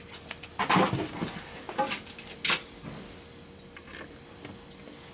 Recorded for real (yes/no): yes